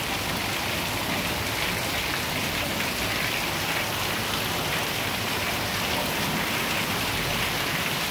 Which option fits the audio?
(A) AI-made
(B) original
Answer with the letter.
B